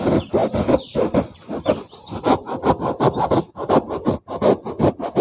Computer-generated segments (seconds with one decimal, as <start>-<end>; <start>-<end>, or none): none